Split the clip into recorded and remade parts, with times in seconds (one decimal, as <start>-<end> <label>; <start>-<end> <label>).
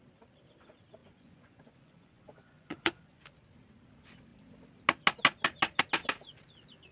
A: 0.0-1.0 recorded; 1.0-3.3 remade; 3.3-6.9 recorded